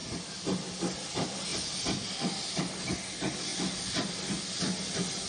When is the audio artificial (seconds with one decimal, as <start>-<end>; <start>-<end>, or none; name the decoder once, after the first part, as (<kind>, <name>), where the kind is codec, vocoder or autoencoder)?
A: none